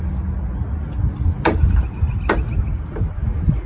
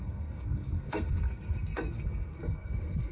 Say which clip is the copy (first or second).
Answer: second